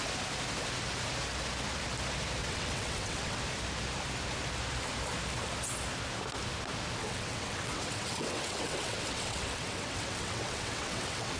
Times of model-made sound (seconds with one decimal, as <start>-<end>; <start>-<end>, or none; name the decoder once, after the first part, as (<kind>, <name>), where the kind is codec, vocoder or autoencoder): 2.4-3.4 (vocoder, WaveNeXt); 7.0-11.4